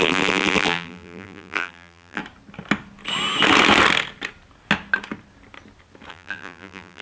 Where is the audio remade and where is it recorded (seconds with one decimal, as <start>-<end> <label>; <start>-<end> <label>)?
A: 0.0-2.2 remade; 2.2-6.1 recorded; 6.1-7.0 remade